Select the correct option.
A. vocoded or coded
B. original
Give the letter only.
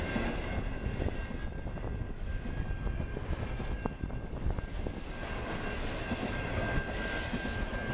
B